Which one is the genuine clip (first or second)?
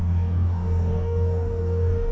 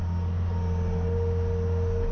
second